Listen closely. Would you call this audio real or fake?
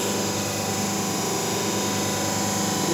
real